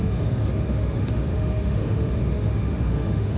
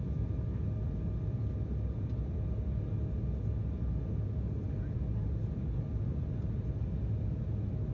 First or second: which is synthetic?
first